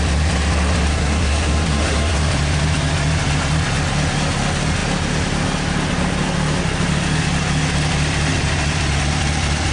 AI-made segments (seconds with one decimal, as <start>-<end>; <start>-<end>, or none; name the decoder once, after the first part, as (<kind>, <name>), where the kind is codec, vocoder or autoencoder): 0.9-2.2 (codec, SNAC)